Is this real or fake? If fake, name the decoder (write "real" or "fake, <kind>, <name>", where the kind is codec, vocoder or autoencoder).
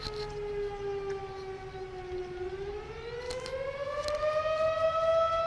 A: real